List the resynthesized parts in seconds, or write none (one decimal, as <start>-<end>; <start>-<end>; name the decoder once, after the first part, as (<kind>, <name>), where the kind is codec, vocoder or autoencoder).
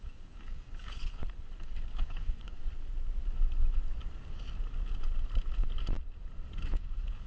0.0-1.2 (codec, DAC); 1.9-2.6; 6.7-7.3